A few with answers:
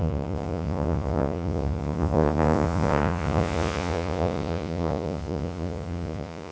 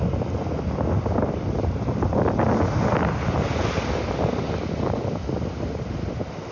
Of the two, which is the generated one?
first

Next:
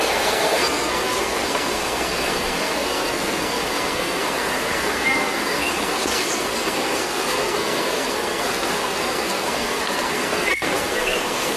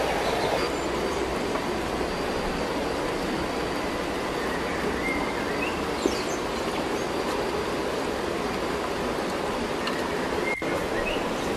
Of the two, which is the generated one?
first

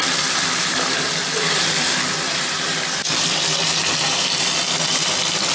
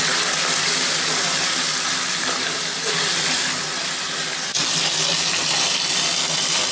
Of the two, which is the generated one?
first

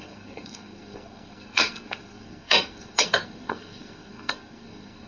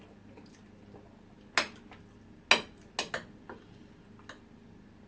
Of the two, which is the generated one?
first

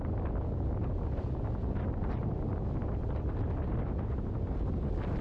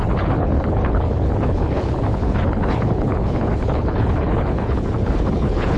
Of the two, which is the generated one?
second